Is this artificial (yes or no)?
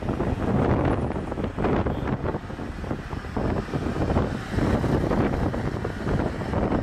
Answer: no